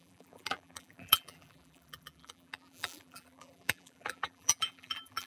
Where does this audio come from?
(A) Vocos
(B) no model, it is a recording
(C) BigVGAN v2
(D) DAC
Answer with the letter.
C